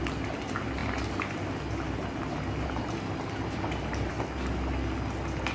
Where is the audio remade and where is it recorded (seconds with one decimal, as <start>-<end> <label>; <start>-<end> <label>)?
0.0-5.5 recorded